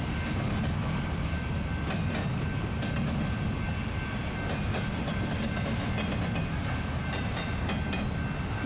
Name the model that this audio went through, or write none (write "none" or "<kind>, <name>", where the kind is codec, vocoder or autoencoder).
none